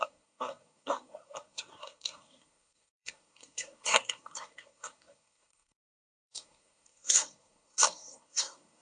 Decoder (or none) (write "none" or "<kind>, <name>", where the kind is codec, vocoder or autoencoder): codec, SNAC